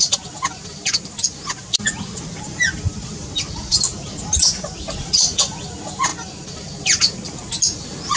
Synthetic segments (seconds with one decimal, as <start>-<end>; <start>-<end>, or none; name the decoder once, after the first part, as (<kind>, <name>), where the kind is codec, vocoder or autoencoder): 5.0-5.6 (vocoder, Vocos)